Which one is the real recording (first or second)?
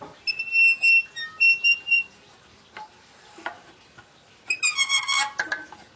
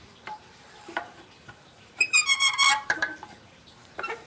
first